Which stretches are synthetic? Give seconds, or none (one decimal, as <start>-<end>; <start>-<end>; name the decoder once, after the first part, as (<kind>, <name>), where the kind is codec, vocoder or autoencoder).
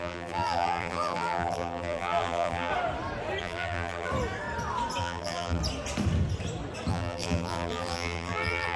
0.0-2.7 (vocoder, BigVGAN v2); 3.4-4.1; 5.0-5.6; 6.9-8.8